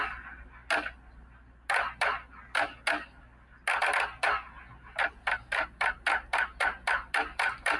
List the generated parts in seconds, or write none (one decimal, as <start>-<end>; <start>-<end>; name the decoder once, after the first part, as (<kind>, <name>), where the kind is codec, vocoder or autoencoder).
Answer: none